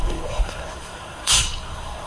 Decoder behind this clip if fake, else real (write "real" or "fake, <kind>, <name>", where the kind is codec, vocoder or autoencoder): fake, codec, SNAC